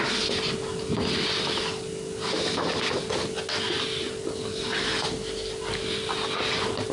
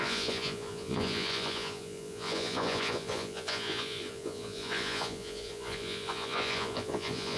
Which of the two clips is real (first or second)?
first